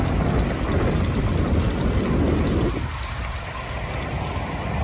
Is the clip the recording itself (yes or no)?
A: yes